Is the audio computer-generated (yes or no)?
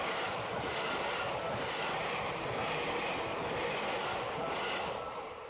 no